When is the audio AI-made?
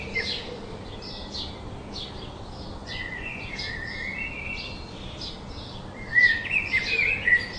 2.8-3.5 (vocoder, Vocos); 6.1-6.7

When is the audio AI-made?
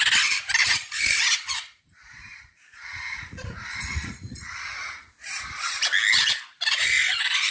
0.6-5.1 (vocoder, Vocos); 6.5-7.1